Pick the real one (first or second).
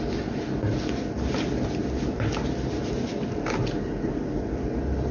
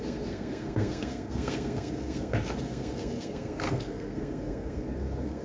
first